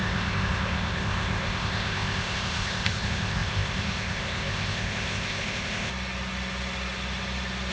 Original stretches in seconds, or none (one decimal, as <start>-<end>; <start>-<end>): 5.9-7.7